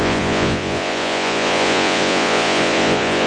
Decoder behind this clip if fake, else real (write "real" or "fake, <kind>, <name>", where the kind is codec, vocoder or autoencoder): fake, vocoder, Vocos